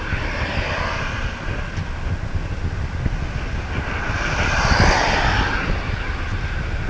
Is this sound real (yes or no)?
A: yes